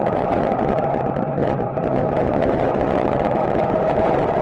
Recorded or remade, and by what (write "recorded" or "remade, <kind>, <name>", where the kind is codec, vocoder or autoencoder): remade, vocoder, Vocos